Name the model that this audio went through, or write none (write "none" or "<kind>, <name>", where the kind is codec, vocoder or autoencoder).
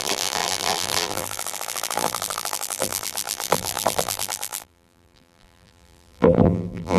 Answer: vocoder, BigVGAN v2